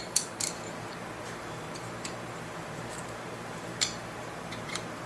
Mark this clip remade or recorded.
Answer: remade